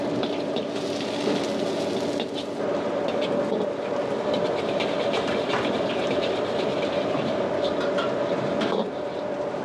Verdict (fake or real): real